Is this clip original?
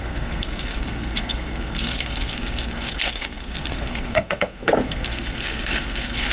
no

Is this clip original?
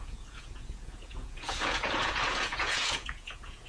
no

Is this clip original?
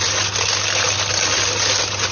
yes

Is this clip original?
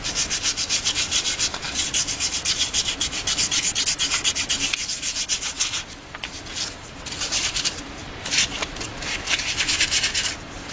no